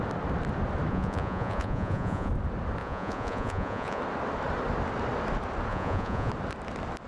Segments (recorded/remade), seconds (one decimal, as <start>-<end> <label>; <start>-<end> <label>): 0.0-0.9 recorded; 0.9-2.3 remade; 2.3-2.8 recorded; 2.8-4.0 remade; 4.0-5.7 recorded; 5.7-6.3 remade; 6.3-7.1 recorded